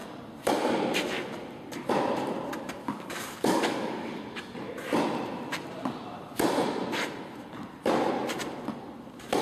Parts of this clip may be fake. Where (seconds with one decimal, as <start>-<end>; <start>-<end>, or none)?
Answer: 2.8-4.2